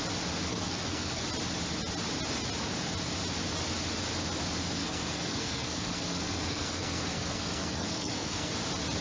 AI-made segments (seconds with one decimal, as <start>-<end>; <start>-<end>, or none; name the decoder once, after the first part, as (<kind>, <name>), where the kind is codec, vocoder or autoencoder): 0.5-1.2 (codec, SNAC); 4.8-8.5